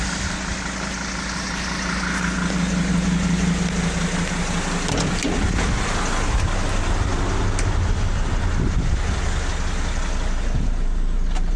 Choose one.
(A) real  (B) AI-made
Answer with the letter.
A